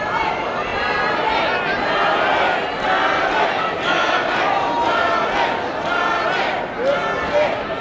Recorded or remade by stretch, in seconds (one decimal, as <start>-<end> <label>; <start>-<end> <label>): 0.0-7.8 recorded